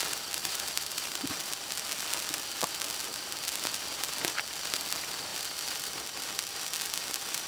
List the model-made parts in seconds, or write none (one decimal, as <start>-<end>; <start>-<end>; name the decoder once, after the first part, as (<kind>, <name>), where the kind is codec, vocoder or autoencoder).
0.4-1.5 (vocoder, BigVGAN v2)